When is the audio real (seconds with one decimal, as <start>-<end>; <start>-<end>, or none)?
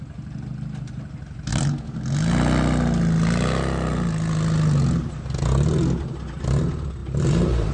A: 0.0-7.0